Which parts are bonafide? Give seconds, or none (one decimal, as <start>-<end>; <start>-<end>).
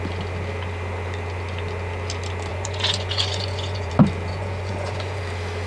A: 0.0-2.5; 3.9-4.3; 5.2-5.7